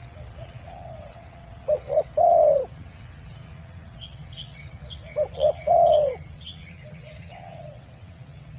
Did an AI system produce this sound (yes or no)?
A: yes